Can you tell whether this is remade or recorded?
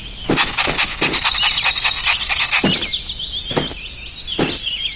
recorded